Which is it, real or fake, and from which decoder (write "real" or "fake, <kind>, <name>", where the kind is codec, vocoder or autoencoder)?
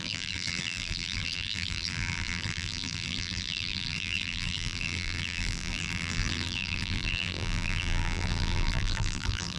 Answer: fake, vocoder, BigVGAN v2